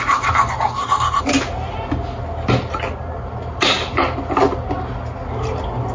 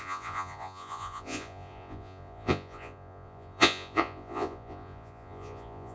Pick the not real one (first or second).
second